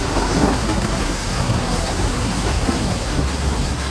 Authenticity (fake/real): fake